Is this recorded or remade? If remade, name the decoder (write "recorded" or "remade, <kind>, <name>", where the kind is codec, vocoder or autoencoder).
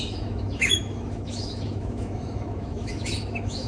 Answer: remade, autoencoder, DAC-VAE